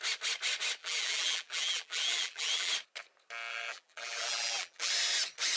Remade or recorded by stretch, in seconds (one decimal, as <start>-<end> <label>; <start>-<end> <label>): 0.0-0.8 recorded; 0.8-2.7 remade; 2.7-3.5 recorded; 3.5-4.9 remade; 4.9-5.6 recorded